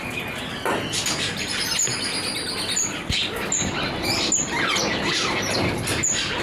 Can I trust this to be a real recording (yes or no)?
yes